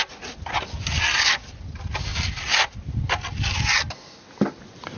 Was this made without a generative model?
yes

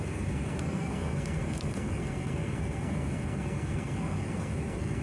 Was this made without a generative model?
no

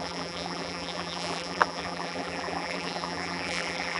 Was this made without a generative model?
no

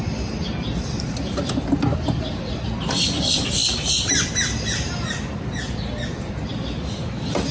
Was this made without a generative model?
yes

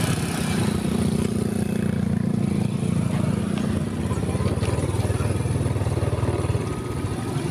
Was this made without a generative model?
yes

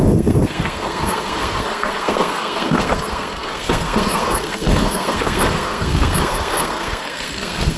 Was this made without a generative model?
no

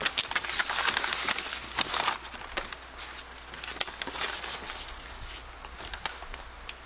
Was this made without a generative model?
yes